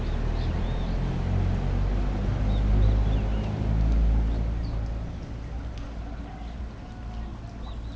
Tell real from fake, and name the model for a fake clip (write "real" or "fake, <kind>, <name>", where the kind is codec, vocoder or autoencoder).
real